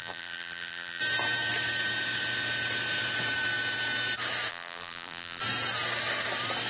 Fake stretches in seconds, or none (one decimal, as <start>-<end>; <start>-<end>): 0.0-1.0; 4.5-5.4